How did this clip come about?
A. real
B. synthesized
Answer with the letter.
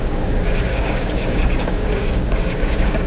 B